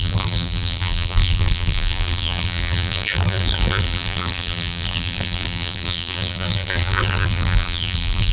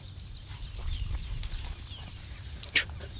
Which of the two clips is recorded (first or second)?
second